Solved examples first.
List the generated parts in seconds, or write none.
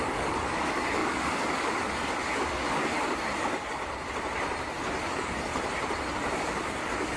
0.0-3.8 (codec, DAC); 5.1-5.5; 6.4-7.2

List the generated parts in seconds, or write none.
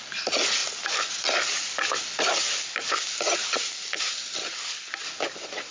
none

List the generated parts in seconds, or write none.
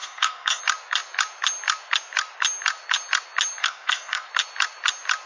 0.0-0.6 (codec, SNAC); 3.6-4.3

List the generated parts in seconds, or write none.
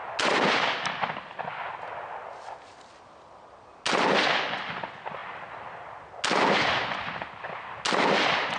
none